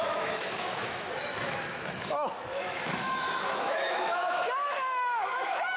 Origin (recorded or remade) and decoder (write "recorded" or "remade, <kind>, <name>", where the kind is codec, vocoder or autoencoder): remade, autoencoder, DAC-VAE